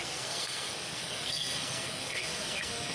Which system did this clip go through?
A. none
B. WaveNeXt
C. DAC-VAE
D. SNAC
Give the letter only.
D